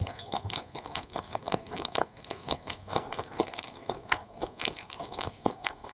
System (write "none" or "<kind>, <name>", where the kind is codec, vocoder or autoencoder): codec, SNAC